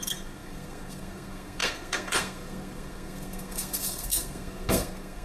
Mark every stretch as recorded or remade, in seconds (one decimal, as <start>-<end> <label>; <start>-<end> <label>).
0.0-5.2 remade

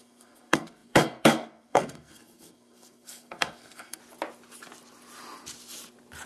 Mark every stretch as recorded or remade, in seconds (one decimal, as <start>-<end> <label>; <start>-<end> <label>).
0.0-4.0 remade; 4.0-6.3 recorded

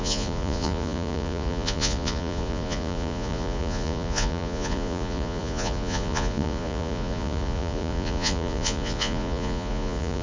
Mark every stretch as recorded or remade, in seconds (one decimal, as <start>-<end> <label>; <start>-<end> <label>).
0.0-10.2 remade